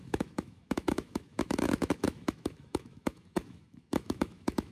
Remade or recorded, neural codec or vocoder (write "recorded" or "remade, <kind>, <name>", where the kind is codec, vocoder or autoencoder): remade, autoencoder, DAC-VAE